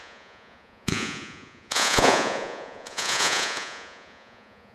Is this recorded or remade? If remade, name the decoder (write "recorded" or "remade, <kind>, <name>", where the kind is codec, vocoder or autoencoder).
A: remade, vocoder, Vocos